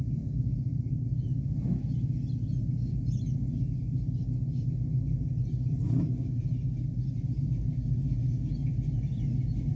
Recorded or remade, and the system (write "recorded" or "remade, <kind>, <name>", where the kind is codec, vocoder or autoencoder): recorded